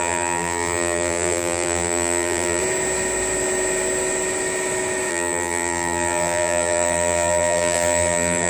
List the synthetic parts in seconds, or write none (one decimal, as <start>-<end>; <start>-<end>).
0.0-2.6; 5.1-8.5